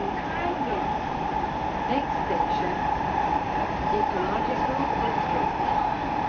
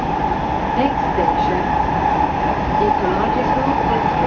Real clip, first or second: second